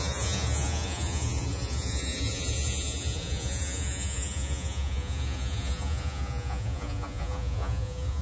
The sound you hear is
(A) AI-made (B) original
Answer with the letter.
A